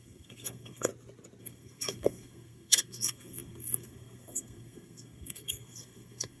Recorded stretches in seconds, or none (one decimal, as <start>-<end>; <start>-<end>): 0.9-1.4